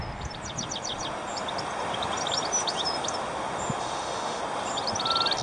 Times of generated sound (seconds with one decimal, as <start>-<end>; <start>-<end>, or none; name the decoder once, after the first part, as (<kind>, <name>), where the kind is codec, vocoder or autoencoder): 3.8-4.4 (autoencoder, DAC-VAE)